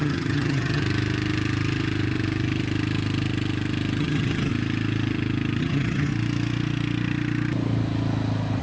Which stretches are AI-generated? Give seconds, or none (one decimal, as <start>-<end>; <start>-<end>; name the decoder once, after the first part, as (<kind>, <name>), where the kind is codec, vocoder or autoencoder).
0.0-0.8 (vocoder, HiFi-GAN); 4.0-4.5; 5.6-6.1

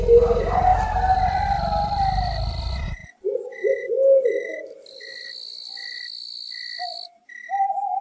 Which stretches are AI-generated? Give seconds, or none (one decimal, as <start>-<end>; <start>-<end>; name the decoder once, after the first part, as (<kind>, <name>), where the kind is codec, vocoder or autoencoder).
0.7-2.6 (vocoder, BigVGAN v2)

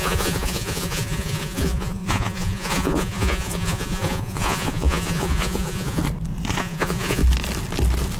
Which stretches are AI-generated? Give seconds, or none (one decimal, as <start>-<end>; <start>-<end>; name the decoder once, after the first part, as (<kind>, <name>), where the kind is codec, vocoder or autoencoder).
0.0-6.0 (vocoder, Vocos); 6.6-7.2

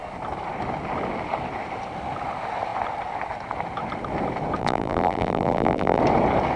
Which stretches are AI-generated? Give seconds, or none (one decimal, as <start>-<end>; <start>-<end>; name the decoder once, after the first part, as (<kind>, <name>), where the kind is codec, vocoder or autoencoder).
4.6-6.0 (vocoder, BigVGAN v2)